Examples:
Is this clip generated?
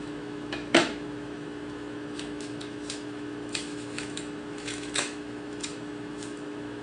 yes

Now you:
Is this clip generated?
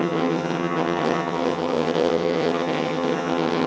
yes